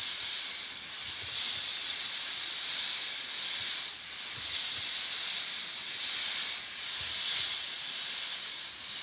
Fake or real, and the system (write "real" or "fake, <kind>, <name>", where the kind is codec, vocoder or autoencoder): real